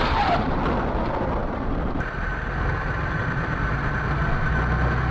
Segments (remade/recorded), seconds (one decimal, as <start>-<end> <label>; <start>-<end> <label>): 0.0-0.6 remade; 0.6-1.4 recorded; 1.4-4.5 remade; 4.5-5.1 recorded